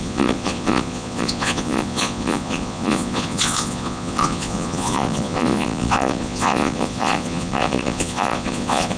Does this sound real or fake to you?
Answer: fake